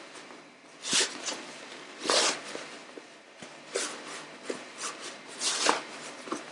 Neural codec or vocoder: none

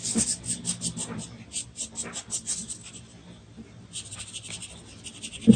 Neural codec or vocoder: none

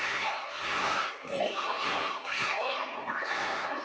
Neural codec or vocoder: codec, SNAC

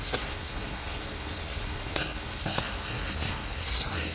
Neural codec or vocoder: codec, SNAC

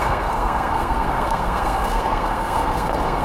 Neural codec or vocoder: codec, SNAC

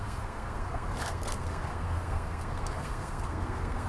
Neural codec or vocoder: codec, SNAC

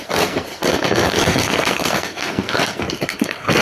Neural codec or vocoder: codec, SNAC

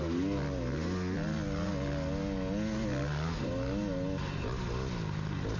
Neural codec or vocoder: none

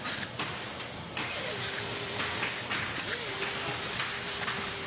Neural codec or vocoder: none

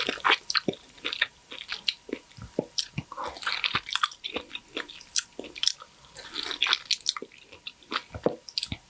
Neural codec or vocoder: none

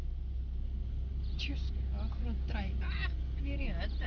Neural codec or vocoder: none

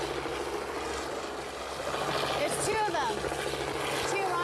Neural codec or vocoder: none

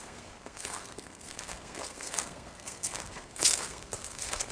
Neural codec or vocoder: codec, SNAC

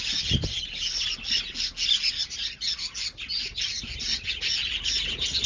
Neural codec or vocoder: none